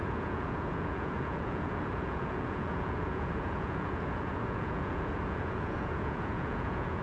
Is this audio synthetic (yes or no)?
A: yes